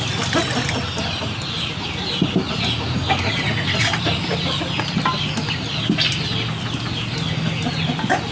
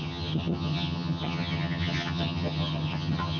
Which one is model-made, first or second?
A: second